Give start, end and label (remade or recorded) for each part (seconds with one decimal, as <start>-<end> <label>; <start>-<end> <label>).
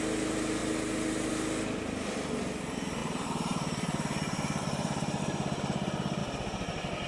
0.0-3.0 recorded; 3.0-5.2 remade; 5.2-6.2 recorded; 6.2-7.1 remade